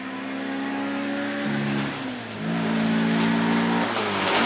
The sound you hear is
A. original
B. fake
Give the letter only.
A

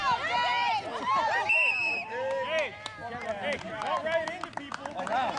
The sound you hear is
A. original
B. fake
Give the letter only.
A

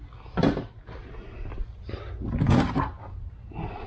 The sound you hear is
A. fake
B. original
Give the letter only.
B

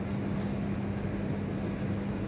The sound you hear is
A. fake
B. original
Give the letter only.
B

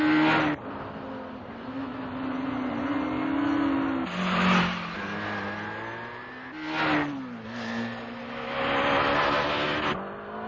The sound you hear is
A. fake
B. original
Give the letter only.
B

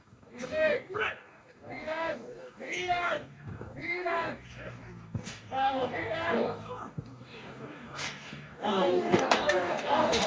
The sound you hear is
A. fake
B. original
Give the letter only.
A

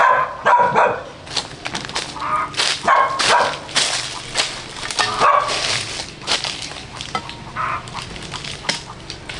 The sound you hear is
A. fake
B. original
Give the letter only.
B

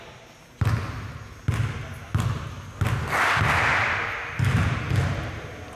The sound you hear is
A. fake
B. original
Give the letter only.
B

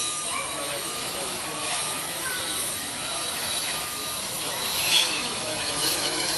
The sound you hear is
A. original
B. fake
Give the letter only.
B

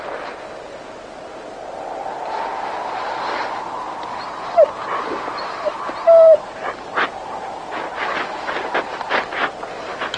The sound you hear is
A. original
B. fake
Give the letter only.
A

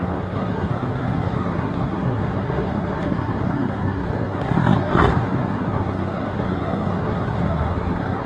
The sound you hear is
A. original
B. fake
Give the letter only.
B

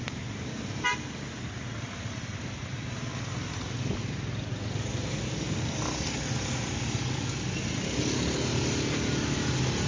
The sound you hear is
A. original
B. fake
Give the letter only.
A